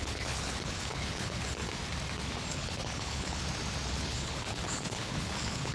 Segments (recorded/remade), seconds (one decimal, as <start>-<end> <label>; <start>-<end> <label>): 0.0-1.6 remade; 1.6-2.5 recorded; 2.5-3.4 remade; 3.4-3.9 recorded; 3.9-5.7 remade